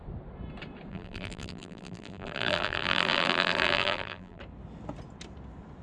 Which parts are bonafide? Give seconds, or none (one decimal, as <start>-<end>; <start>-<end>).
0.0-0.9; 4.4-5.8